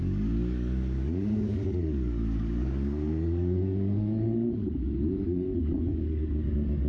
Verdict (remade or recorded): remade